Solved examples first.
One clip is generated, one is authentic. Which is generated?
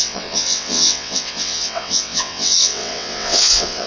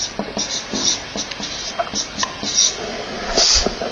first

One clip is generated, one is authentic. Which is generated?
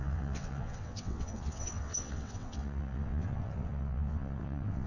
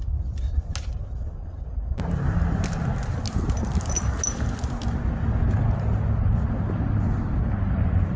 first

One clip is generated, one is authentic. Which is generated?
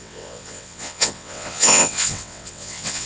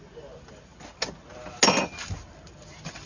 first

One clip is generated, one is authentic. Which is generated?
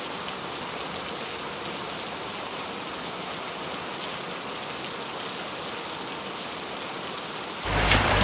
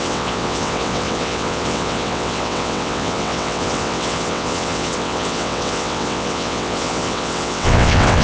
second